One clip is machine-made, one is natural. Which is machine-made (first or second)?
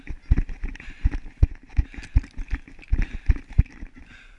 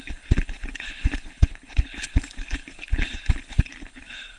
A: second